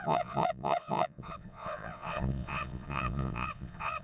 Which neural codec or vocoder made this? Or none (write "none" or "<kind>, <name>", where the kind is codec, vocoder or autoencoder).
vocoder, Vocos